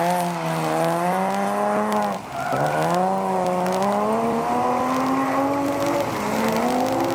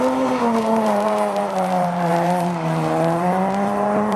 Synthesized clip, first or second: second